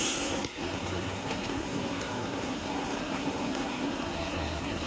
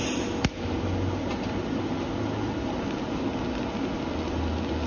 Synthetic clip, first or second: first